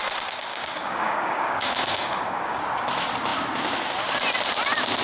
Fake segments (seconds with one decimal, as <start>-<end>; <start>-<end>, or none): 0.5-2.6